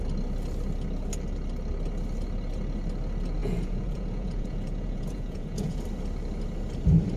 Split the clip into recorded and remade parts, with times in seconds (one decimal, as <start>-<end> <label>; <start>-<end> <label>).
0.0-3.4 recorded; 3.4-5.8 remade; 5.8-7.2 recorded